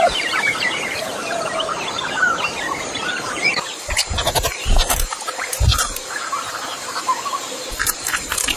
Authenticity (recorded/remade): remade